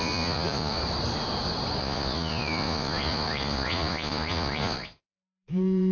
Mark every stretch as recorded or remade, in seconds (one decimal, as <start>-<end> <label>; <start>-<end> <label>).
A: 0.0-0.8 remade; 0.8-1.8 recorded; 1.8-5.9 remade